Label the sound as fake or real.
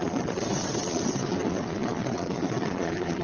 fake